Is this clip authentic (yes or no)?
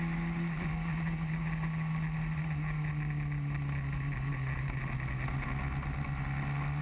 yes